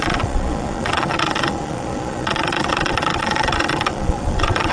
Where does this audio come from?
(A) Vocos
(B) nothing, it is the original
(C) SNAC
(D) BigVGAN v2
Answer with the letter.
A